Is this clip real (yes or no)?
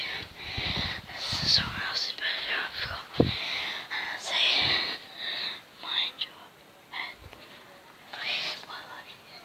yes